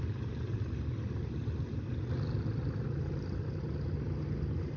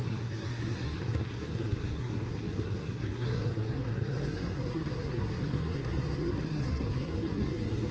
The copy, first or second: second